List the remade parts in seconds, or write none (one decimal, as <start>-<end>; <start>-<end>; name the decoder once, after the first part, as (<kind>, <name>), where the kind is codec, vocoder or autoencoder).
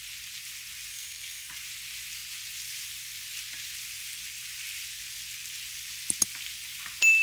0.9-1.5 (codec, SNAC)